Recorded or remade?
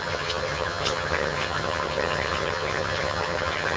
remade